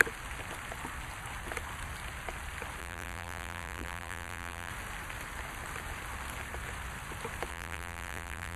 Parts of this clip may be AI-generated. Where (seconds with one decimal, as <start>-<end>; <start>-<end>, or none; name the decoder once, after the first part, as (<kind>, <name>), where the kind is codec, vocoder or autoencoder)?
2.8-4.7 (vocoder, BigVGAN v2); 7.5-8.6